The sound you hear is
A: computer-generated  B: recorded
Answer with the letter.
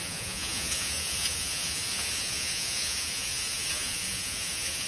A